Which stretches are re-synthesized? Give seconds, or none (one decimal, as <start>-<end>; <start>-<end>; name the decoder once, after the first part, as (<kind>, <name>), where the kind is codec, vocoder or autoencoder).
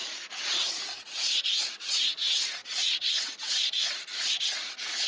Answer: 0.0-5.1 (vocoder, Vocos)